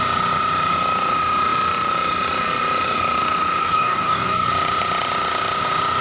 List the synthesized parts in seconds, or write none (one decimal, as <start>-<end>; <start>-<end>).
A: 3.6-4.5